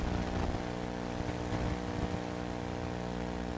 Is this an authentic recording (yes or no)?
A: yes